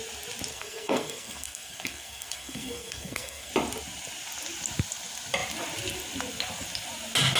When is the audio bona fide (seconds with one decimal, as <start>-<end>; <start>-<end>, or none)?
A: 0.0-0.5; 3.5-7.4